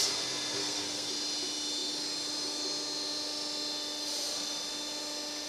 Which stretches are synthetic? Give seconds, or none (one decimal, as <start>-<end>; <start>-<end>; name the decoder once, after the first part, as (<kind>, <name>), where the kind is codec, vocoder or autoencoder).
0.6-1.1 (codec, SNAC)

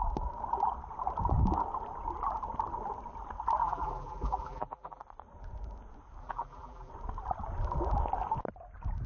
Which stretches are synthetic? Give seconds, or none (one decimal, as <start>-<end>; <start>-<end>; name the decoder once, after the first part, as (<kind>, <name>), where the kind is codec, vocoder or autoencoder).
3.6-5.0 (vocoder, BigVGAN v2); 6.2-6.9

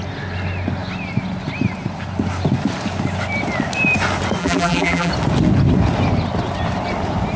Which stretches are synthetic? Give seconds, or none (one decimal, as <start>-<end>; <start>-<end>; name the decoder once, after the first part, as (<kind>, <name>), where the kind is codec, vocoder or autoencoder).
4.4-5.1 (vocoder, BigVGAN v2)